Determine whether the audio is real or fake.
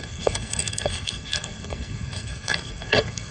fake